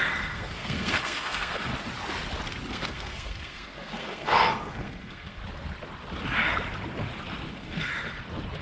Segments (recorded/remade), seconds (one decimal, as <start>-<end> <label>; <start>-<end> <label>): 0.0-1.7 remade; 1.7-2.7 recorded; 2.7-5.4 remade; 5.4-7.5 recorded; 7.5-7.9 remade; 7.9-8.6 recorded